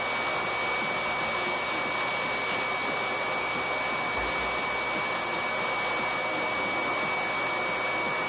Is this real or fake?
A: real